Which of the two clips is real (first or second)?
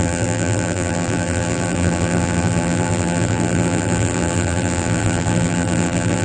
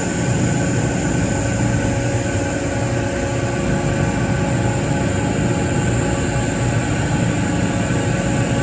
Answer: second